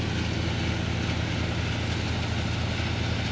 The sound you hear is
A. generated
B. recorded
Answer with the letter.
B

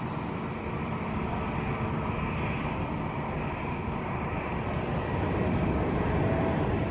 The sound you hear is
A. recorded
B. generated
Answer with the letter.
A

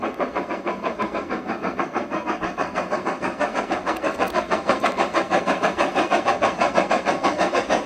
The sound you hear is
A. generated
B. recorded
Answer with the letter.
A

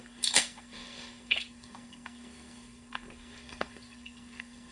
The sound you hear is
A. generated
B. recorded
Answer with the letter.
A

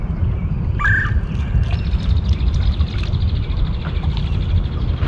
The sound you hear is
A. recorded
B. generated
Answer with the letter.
A